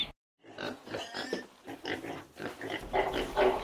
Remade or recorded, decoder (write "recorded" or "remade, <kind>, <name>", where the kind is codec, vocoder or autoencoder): recorded